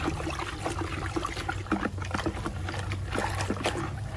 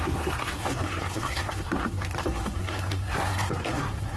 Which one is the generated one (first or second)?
second